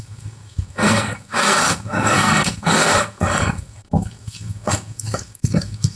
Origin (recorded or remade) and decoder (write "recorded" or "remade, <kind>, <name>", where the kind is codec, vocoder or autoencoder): remade, codec, SNAC